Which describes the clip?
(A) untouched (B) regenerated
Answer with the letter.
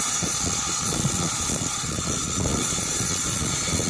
B